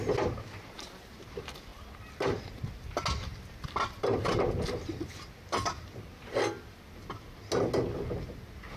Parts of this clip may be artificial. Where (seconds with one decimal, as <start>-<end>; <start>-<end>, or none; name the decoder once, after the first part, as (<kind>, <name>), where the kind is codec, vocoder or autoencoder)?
none